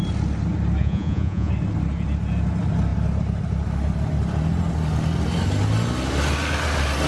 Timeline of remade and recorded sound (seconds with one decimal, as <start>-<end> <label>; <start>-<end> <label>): 0.0-0.8 recorded; 0.8-1.5 remade; 1.5-7.1 recorded